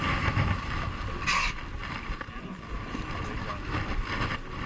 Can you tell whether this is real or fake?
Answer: real